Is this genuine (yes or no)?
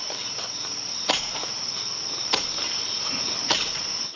yes